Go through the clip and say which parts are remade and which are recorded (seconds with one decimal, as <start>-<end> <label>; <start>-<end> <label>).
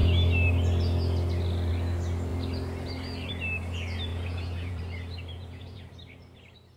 0.0-4.1 recorded; 4.1-4.8 remade; 4.8-5.3 recorded; 5.3-5.9 remade; 5.9-6.8 recorded